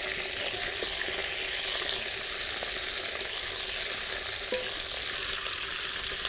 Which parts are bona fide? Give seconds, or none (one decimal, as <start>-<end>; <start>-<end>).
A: 0.0-6.3